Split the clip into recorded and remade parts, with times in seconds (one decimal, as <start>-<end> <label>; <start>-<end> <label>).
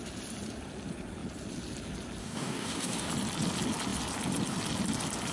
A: 0.0-2.2 recorded; 2.2-3.1 remade; 3.1-5.3 recorded